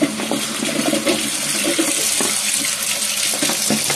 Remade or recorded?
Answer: recorded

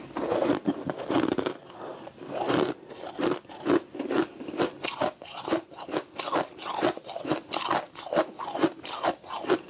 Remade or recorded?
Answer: recorded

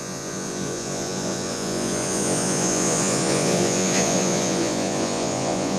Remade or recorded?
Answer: remade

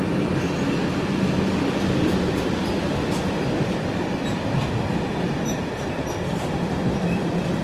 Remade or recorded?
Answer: recorded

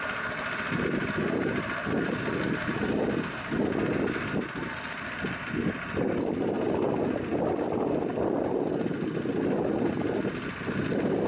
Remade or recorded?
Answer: recorded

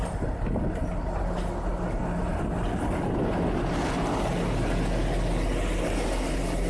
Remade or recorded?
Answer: recorded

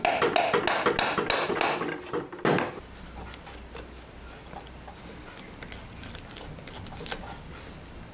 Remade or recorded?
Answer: recorded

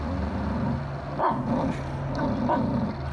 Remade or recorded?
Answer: recorded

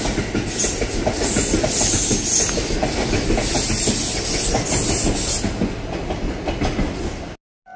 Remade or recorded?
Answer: recorded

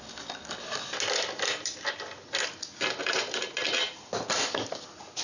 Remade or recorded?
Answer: recorded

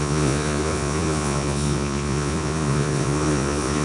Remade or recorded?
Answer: remade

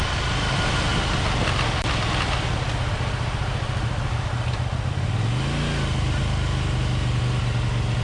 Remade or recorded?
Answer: recorded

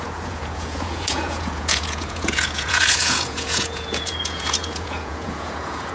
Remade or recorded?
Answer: remade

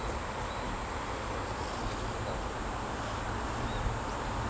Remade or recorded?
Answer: recorded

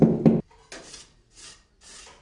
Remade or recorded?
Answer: recorded